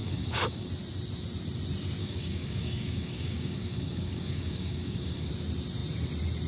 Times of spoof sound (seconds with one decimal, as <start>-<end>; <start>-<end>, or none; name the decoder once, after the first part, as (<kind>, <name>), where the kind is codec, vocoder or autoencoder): 0.0-0.7 (codec, DAC); 2.0-5.3